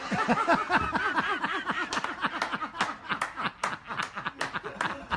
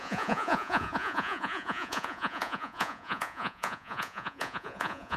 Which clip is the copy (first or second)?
second